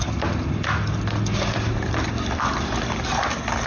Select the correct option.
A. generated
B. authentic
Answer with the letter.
B